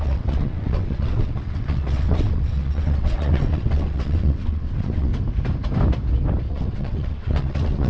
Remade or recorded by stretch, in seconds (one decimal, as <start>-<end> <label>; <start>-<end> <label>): 0.0-5.1 remade; 5.1-6.5 recorded; 6.5-7.9 remade

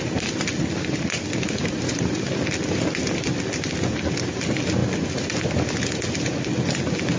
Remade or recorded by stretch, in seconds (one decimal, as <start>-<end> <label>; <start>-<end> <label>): 0.0-7.2 recorded